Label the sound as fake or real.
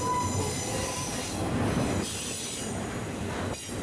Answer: real